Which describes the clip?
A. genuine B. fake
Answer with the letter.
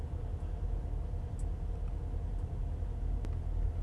A